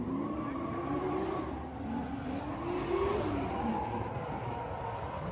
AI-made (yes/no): no